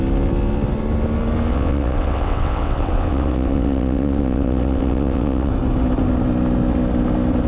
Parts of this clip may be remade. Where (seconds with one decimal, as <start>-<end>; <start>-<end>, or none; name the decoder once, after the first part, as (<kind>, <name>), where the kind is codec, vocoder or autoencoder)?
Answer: 1.5-5.5 (vocoder, WaveNeXt)